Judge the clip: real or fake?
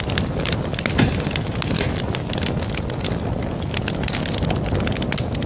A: real